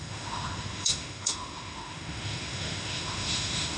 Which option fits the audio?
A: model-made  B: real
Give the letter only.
A